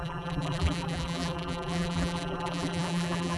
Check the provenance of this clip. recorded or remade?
remade